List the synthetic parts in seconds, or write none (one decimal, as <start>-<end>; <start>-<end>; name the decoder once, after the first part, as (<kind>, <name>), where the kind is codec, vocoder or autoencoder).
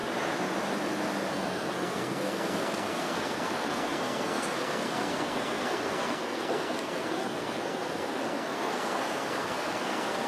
1.3-10.3 (codec, SNAC)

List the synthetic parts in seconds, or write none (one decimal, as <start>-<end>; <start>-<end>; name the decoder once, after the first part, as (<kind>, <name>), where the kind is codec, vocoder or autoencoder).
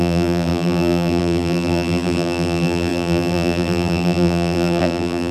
0.0-5.3 (vocoder, BigVGAN v2)